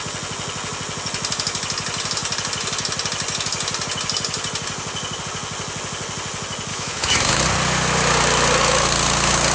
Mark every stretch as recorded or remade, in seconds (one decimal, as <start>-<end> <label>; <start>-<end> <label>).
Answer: 0.0-6.7 recorded; 6.7-7.4 remade; 7.4-9.5 recorded